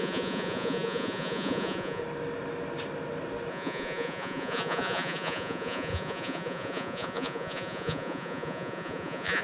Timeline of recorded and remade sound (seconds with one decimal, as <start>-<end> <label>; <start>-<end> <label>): 0.0-2.0 remade; 2.0-3.5 recorded; 3.5-9.4 remade